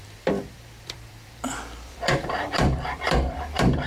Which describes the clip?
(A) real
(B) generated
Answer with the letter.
B